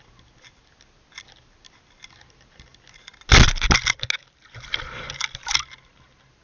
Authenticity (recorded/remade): recorded